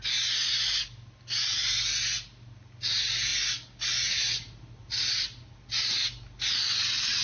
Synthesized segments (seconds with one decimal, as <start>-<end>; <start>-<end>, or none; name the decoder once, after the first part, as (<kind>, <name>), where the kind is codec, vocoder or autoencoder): none